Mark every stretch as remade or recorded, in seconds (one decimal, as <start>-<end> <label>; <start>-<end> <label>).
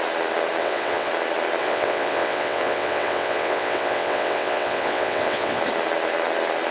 0.0-0.6 recorded; 0.6-1.1 remade; 1.1-1.6 recorded; 1.6-5.6 remade; 5.6-6.7 recorded